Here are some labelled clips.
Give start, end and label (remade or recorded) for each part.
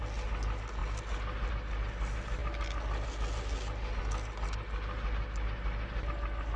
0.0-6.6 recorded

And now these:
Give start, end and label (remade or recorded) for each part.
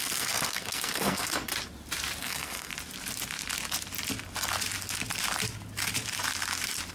0.0-1.5 remade; 1.5-2.2 recorded; 2.2-2.7 remade; 2.7-6.9 recorded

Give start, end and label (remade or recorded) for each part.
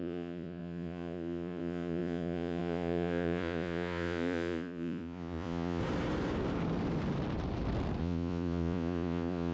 0.0-5.8 remade; 5.8-8.0 recorded; 8.0-9.5 remade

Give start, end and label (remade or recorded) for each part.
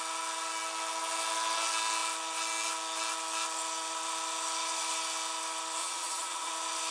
0.0-5.8 recorded; 5.8-6.5 remade; 6.5-6.9 recorded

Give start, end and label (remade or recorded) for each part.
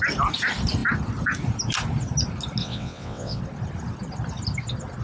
0.0-2.6 recorded; 2.6-3.4 remade; 3.4-5.0 recorded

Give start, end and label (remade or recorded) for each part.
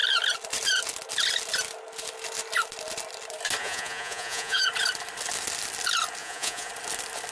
0.0-3.6 recorded; 3.6-4.6 remade; 4.6-6.2 recorded; 6.2-6.7 remade; 6.7-7.3 recorded